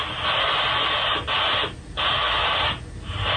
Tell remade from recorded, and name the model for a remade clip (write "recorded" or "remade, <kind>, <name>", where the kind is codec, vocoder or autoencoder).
recorded